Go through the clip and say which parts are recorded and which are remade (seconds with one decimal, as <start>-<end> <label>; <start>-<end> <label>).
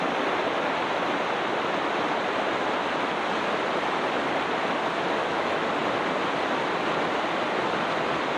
0.0-5.2 recorded; 5.2-5.7 remade; 5.7-8.4 recorded